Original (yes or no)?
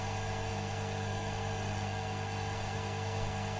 no